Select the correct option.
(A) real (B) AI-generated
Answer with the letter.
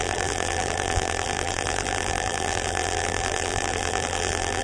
B